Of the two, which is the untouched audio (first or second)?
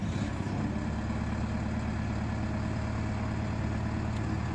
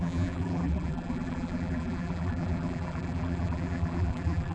first